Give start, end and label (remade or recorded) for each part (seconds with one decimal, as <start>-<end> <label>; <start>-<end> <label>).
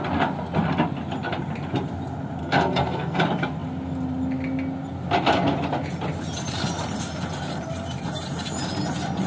0.0-2.4 recorded; 2.4-3.2 remade; 3.2-9.3 recorded